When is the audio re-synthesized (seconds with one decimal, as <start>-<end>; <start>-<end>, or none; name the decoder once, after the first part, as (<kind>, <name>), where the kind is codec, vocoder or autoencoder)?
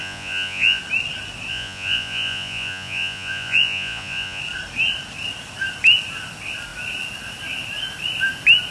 0.0-0.8 (vocoder, Vocos); 1.5-4.4